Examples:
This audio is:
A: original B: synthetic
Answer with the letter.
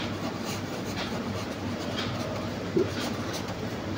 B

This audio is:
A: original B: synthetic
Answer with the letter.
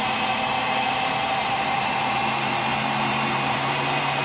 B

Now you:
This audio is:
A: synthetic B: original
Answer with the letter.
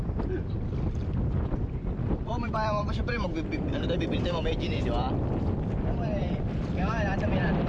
A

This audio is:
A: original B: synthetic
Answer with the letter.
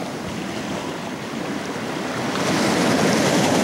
A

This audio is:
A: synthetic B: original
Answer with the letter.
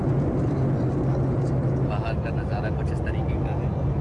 B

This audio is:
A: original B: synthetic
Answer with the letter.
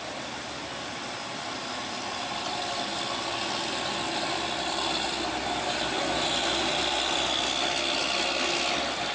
A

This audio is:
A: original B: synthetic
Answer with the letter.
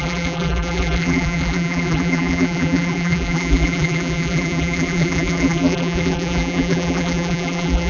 B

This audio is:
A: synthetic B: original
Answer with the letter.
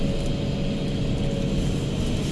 B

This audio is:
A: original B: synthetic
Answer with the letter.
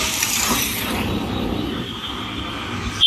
B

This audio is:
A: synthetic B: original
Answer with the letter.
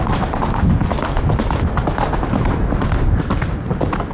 B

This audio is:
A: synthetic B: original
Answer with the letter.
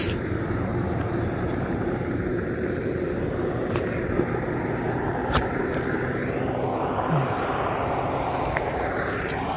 A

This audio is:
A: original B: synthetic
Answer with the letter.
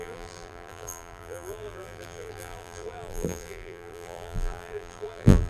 B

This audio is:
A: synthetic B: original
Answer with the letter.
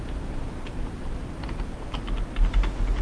B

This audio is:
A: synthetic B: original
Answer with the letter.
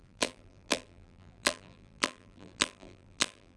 A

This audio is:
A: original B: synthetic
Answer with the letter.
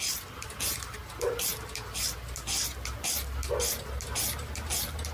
A